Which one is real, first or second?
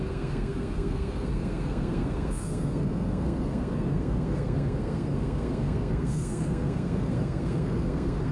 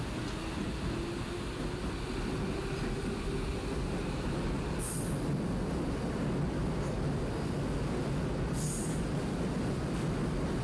second